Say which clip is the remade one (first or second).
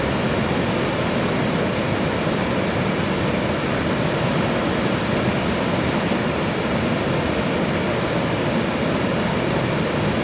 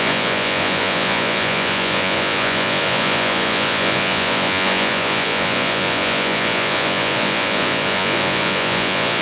second